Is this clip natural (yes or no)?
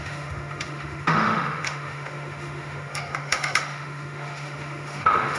no